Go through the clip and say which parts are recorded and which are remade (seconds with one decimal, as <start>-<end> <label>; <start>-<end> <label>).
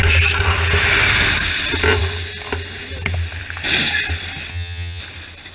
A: 0.0-4.5 recorded; 4.5-5.0 remade; 5.0-5.5 recorded